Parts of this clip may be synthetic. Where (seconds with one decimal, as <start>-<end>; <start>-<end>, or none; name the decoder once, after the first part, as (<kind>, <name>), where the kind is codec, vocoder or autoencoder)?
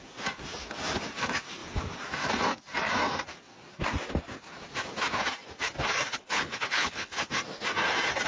6.1-7.2 (codec, HILCodec)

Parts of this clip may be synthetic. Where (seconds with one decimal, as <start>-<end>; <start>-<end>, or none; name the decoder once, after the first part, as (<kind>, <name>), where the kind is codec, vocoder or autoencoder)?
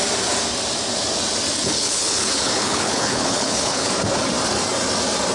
1.6-3.9 (codec, HILCodec)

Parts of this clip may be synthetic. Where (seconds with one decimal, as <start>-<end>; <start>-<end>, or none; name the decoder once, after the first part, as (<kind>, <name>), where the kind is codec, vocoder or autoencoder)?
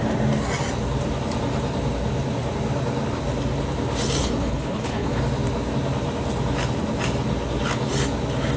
4.2-5.2 (codec, HILCodec)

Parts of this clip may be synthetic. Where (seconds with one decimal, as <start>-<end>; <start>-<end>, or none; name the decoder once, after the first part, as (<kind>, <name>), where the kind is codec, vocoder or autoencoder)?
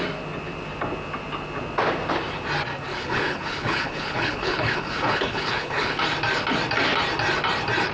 2.9-6.0 (codec, HILCodec)